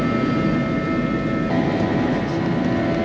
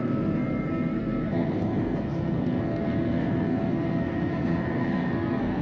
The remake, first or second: second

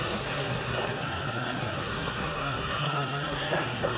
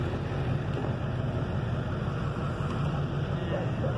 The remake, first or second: first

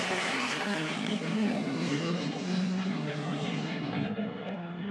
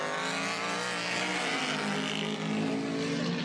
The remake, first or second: first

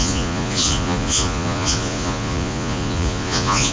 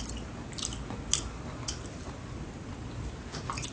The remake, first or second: first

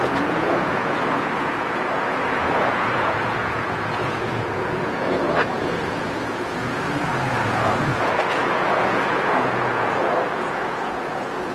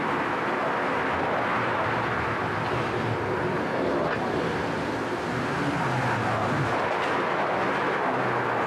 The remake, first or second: first